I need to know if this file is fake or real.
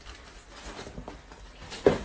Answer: real